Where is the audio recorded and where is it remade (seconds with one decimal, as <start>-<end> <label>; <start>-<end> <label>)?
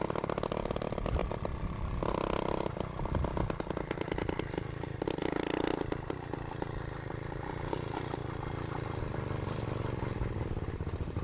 0.0-1.2 recorded; 1.2-2.1 remade; 2.1-11.2 recorded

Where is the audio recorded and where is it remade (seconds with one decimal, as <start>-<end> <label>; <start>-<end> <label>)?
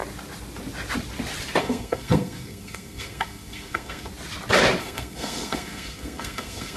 0.0-1.6 recorded; 1.6-4.1 remade; 4.1-4.8 recorded; 4.8-6.8 remade